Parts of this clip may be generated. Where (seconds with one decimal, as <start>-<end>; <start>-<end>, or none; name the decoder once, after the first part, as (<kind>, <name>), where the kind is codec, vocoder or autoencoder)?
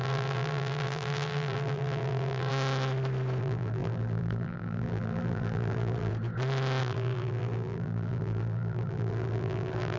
0.0-2.5 (vocoder, BigVGAN v2); 3.4-6.1; 6.8-10.0